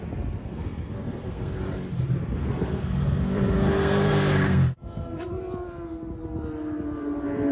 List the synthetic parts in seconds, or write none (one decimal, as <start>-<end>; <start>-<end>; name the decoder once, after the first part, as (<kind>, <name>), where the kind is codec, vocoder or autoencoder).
0.4-1.6 (codec, SNAC); 2.4-5.3